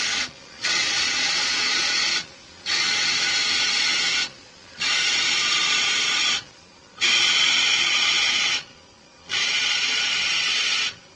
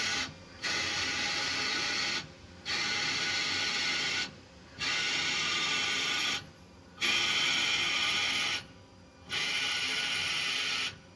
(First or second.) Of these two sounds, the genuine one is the second